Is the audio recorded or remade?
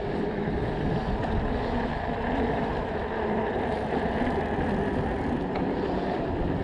remade